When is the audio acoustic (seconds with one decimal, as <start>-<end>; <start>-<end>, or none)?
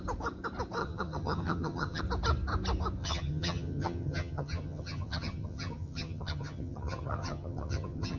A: 0.0-0.8; 2.0-3.0